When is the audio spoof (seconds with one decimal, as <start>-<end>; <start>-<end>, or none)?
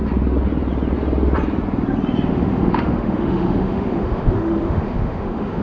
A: 2.3-5.6